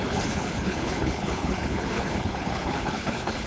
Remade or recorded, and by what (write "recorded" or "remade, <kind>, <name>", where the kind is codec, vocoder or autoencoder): remade, codec, HILCodec